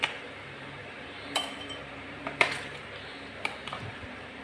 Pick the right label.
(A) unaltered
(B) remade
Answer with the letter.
B